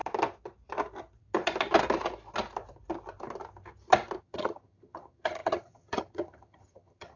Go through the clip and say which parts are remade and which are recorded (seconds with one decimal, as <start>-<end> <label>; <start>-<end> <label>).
0.0-4.2 recorded; 4.2-7.2 remade